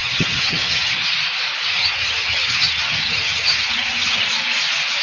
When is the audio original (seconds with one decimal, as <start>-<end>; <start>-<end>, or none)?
0.9-1.8; 4.2-5.0